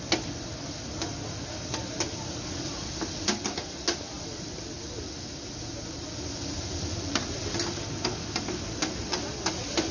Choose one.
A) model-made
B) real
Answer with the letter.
B